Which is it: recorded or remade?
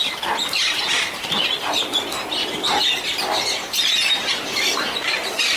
recorded